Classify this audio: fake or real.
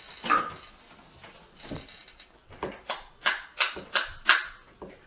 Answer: real